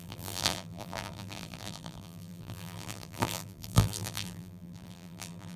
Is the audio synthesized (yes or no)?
yes